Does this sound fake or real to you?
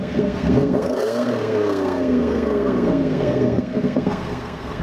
fake